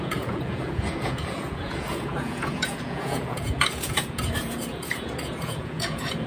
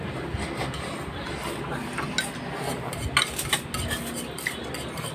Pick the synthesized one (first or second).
first